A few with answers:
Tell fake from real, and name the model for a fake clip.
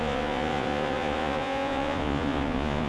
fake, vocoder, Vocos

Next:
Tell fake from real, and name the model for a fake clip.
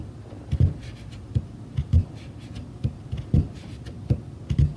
real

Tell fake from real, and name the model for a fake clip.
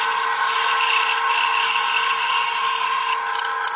real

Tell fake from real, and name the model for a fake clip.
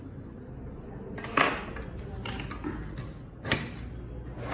real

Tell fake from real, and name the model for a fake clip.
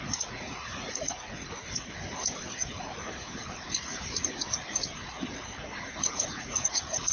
fake, vocoder, Vocos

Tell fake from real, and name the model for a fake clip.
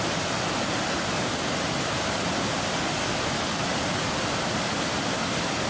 real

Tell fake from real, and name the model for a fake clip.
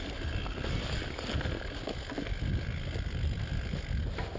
real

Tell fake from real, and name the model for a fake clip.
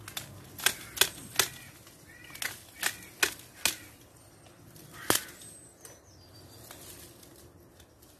real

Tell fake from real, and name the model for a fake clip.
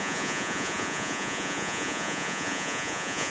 fake, vocoder, Vocos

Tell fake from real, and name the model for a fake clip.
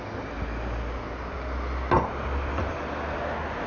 real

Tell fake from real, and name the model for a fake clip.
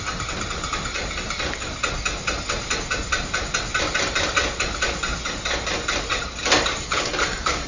real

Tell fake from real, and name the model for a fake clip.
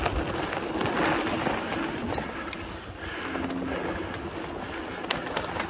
real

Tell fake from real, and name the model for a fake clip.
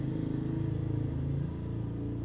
real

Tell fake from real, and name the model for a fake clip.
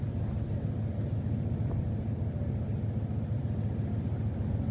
real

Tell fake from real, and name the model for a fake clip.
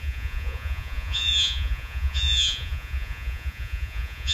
fake, vocoder, Vocos